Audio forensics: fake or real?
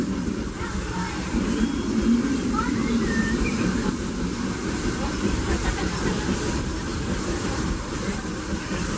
fake